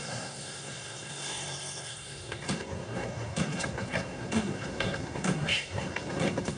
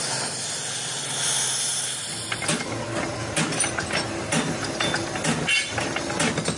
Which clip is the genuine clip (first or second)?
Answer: second